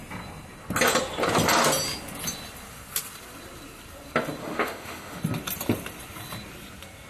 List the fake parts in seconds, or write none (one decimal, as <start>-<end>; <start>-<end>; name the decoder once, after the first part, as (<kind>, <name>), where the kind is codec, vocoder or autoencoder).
4.4-5.2 (autoencoder, DAC-VAE)